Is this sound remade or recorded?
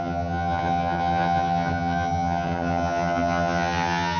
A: remade